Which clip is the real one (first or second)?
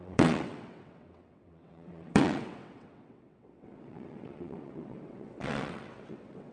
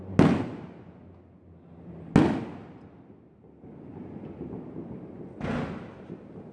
second